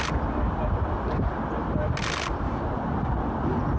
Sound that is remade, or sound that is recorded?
recorded